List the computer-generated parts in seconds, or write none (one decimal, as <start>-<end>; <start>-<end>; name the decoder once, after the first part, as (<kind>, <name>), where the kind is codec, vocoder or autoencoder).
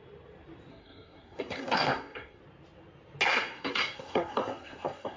0.7-2.4 (codec, SNAC); 3.3-5.2